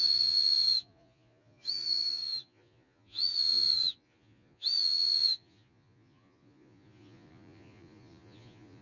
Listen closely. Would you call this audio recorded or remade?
remade